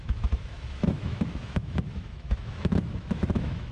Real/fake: fake